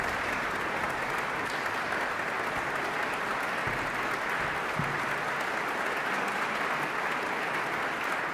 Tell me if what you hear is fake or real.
real